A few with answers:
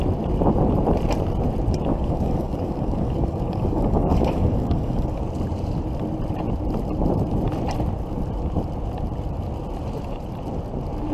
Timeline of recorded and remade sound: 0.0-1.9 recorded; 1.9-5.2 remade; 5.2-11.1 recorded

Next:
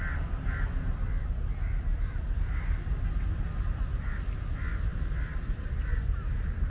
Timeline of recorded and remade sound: 0.0-6.7 recorded

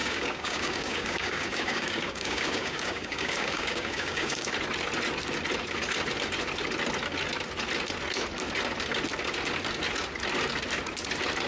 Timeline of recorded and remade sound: 0.0-4.5 remade; 4.5-11.5 recorded

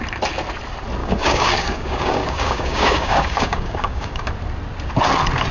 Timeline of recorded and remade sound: 0.0-1.0 recorded; 1.0-4.3 remade; 4.3-5.5 recorded

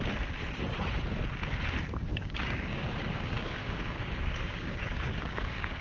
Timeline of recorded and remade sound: 0.0-2.1 recorded; 2.1-5.8 remade

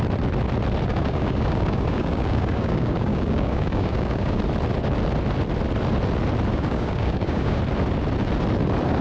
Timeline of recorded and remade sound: 0.0-0.9 recorded; 0.9-4.4 remade; 4.4-6.5 recorded; 6.5-7.6 remade; 7.6-9.0 recorded

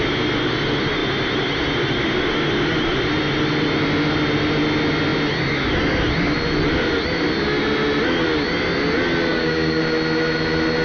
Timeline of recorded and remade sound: 0.0-9.3 recorded; 9.3-9.8 remade; 9.8-10.8 recorded

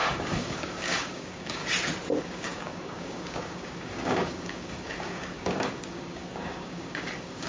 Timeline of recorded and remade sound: 0.0-1.6 remade; 1.6-2.2 recorded; 2.2-7.5 remade